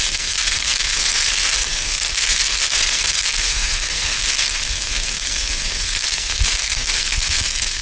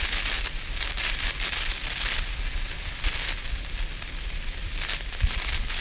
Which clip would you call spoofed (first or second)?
first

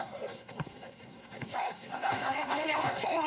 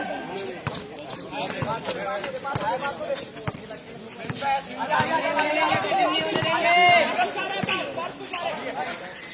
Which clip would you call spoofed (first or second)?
first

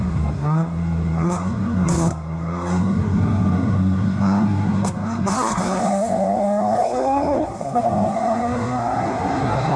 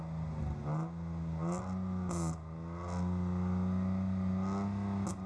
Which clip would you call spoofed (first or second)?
first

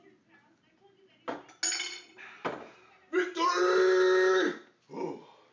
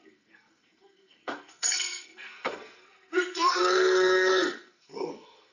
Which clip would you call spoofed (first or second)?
second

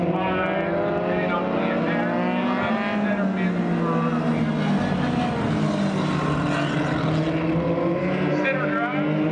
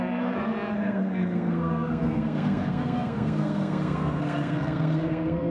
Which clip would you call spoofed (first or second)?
second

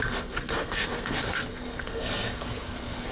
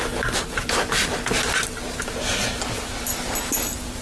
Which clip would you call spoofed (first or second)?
first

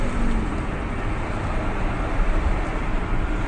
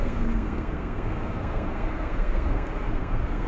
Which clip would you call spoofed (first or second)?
second